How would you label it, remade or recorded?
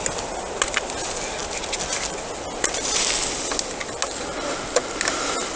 recorded